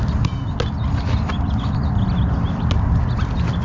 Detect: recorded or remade recorded